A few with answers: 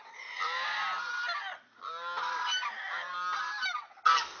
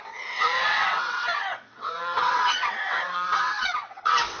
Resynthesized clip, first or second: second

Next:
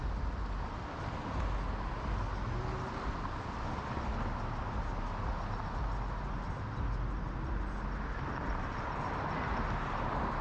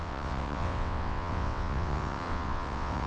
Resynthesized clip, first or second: second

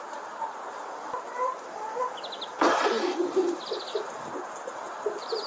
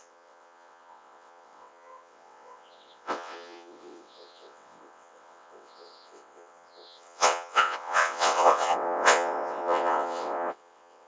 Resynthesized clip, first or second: second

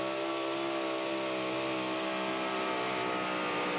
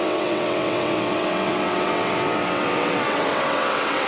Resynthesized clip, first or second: second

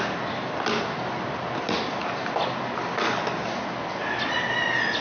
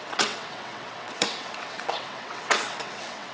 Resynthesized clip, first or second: second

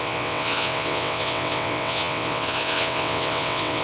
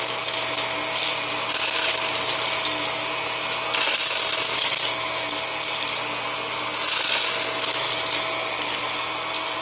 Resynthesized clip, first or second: first